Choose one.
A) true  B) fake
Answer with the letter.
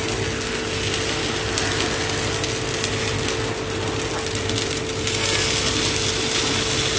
A